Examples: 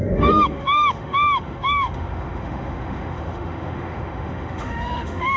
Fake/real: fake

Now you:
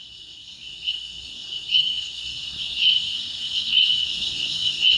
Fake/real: fake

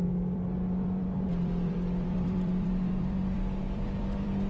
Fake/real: fake